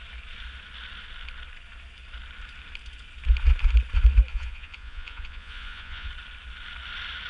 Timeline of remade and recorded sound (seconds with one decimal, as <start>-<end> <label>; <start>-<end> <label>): 0.0-4.3 recorded; 4.3-6.1 remade; 6.1-7.3 recorded